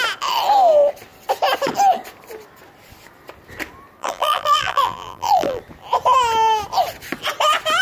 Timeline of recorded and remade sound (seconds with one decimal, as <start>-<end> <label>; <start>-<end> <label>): 0.0-4.0 recorded; 4.0-5.6 remade; 5.6-7.8 recorded